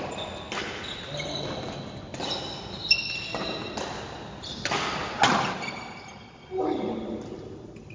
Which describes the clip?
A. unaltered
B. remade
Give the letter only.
A